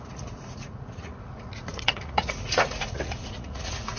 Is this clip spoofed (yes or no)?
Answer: yes